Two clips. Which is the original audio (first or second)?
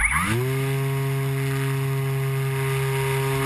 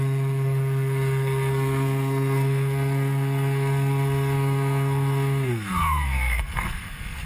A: first